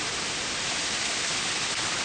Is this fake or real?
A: real